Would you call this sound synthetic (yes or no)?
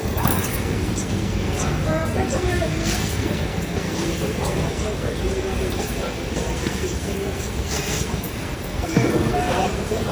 yes